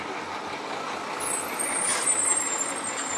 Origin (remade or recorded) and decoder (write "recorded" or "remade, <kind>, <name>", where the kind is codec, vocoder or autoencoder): recorded